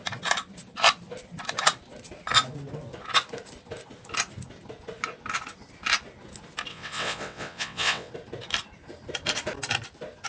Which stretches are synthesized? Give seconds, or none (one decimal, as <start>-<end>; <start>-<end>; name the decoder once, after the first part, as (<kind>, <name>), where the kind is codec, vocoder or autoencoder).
6.7-8.1 (vocoder, WaveNeXt)